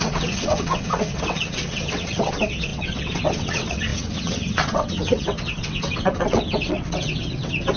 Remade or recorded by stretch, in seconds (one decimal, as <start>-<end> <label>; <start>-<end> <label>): 0.0-7.8 remade